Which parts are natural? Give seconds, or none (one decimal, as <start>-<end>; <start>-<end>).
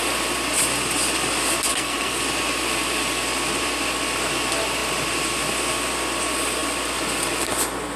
0.0-1.7; 2.2-8.0